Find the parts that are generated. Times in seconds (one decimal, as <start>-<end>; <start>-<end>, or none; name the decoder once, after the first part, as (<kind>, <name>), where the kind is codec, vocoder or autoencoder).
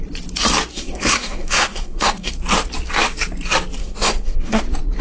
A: 0.7-2.3 (codec, SNAC); 3.8-4.6